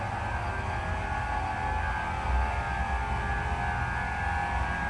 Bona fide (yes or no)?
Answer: yes